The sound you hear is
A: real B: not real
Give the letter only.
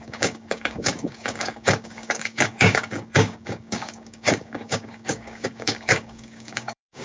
B